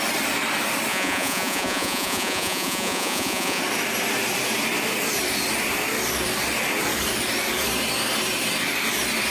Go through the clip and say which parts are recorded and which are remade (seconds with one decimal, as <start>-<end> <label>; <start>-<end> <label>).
0.0-0.9 recorded; 0.9-3.6 remade; 3.6-9.3 recorded